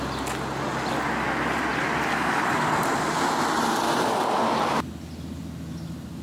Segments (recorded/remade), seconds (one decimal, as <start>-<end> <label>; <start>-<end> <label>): 0.0-6.2 recorded